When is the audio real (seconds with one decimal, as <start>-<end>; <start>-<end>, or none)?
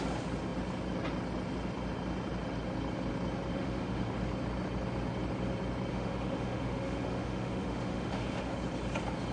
0.0-3.5; 4.0-5.9; 8.5-9.3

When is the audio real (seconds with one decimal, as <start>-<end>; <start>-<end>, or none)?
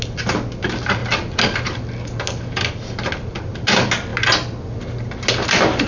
0.0-5.9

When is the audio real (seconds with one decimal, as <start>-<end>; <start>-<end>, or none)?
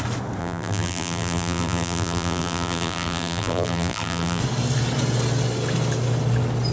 0.0-0.4; 4.4-6.7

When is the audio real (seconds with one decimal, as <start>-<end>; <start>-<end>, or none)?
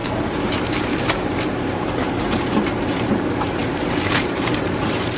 none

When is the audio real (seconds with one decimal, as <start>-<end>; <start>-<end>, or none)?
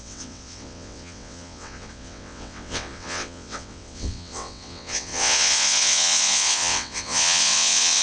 none